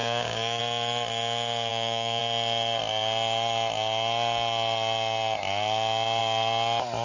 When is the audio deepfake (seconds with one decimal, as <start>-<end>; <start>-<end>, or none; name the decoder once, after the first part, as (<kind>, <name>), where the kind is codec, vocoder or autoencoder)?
0.0-0.6 (codec, DAC); 1.7-2.2